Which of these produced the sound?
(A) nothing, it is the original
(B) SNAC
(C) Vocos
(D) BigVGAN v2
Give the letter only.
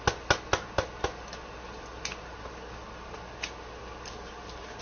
A